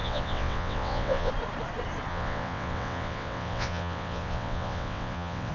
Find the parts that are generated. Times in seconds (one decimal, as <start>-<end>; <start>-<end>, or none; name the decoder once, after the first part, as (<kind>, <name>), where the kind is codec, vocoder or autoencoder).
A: 0.0-1.3 (vocoder, WaveNeXt); 2.1-5.5